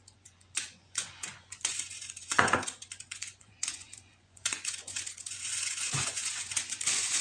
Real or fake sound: fake